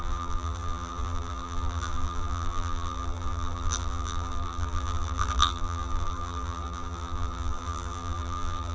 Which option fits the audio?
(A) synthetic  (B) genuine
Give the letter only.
A